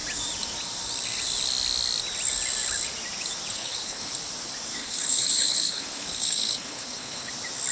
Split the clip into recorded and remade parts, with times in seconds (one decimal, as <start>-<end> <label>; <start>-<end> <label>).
0.0-3.5 recorded; 3.5-4.1 remade; 4.1-4.8 recorded; 4.8-7.3 remade; 7.3-7.7 recorded